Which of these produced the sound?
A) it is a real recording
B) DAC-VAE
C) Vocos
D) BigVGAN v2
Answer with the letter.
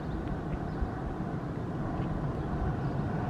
A